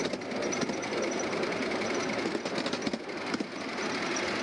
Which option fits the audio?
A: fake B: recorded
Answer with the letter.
B